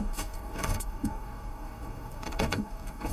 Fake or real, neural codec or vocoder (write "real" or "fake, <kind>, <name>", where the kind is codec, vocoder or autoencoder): fake, codec, DAC